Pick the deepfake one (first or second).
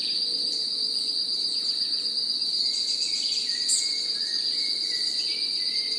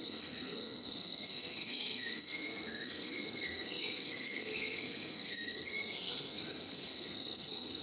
second